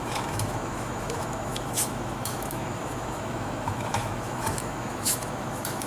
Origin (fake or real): fake